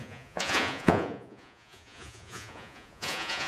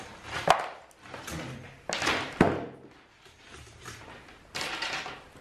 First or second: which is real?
second